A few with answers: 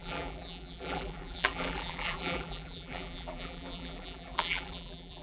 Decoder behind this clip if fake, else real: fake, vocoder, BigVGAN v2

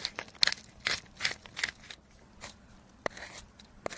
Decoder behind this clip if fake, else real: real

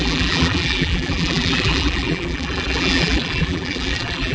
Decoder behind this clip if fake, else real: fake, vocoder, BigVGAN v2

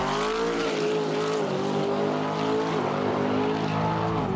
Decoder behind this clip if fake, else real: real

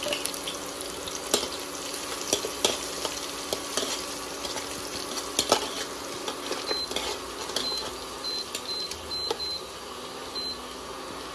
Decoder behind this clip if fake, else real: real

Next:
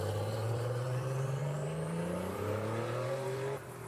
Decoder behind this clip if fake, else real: fake, vocoder, BigVGAN v2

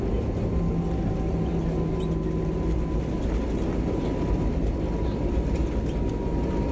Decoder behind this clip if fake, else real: real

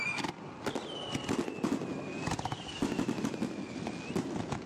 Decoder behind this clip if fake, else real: real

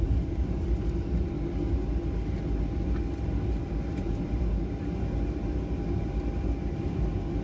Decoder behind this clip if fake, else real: real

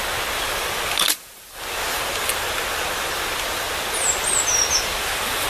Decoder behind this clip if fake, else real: real